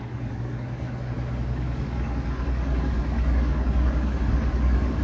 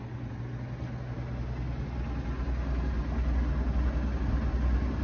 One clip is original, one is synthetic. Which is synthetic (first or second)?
first